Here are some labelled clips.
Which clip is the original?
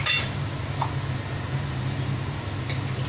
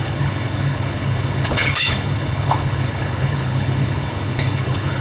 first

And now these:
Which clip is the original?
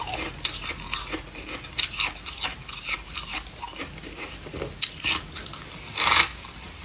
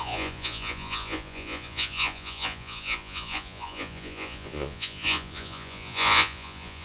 first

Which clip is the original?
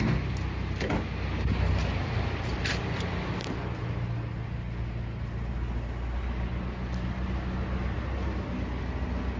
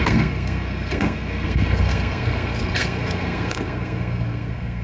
first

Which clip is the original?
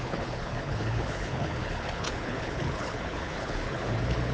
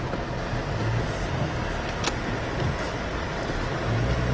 second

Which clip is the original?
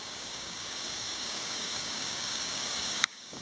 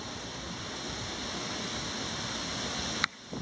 second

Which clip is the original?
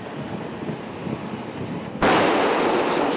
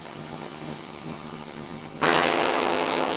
first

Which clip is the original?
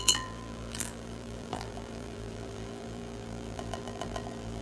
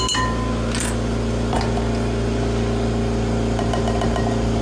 second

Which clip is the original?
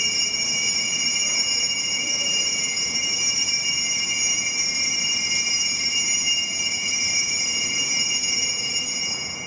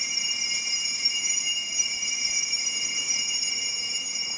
first